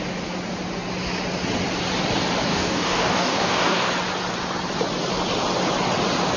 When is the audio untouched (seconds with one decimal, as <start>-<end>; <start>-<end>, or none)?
0.0-2.5; 3.9-6.4